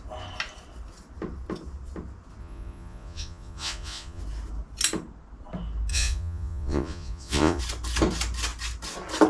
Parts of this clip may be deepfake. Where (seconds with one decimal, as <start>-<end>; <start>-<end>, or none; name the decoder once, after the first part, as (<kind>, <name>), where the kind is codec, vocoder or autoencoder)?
2.4-4.2 (vocoder, Vocos); 5.9-7.6